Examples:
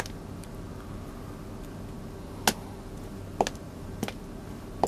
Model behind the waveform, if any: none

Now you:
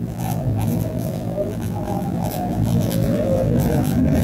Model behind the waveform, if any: vocoder, BigVGAN v2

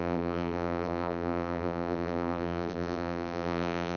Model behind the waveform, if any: vocoder, BigVGAN v2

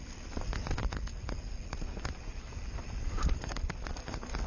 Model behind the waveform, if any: none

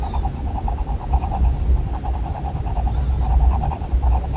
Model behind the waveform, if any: vocoder, BigVGAN v2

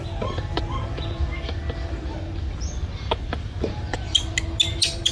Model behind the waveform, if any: none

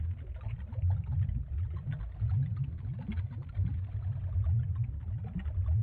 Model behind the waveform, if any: none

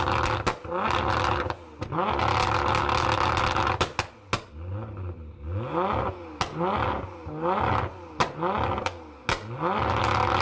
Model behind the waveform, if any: none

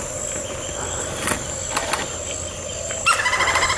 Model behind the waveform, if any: none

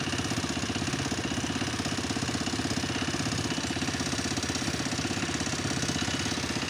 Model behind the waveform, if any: none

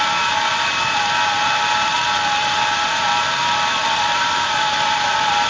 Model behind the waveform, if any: vocoder, BigVGAN v2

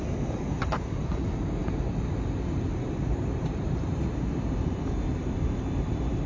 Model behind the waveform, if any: vocoder, BigVGAN v2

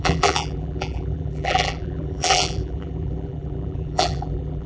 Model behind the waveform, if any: vocoder, BigVGAN v2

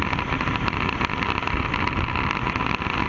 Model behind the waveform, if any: none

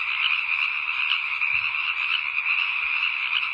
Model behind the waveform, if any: none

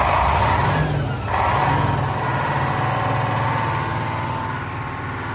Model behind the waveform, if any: none